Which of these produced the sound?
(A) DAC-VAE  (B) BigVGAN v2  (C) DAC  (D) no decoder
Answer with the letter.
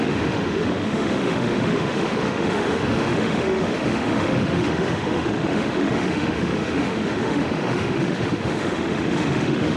A